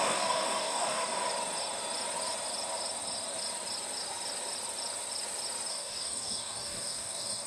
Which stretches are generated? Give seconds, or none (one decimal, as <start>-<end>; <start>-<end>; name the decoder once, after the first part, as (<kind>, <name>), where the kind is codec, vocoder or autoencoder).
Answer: 0.0-1.2 (codec, DAC); 5.7-7.5